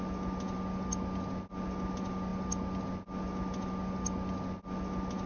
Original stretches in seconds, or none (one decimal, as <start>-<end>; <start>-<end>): 0.0-5.3